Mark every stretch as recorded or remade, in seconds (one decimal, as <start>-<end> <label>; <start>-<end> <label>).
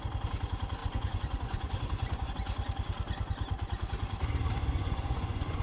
0.0-0.8 recorded; 0.8-2.3 remade; 2.3-4.7 recorded; 4.7-5.6 remade